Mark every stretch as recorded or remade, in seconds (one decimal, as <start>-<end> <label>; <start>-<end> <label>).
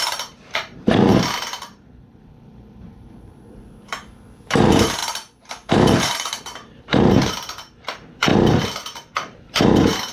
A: 0.0-5.0 remade; 5.0-5.7 recorded; 5.7-8.3 remade; 8.3-8.8 recorded; 8.8-10.1 remade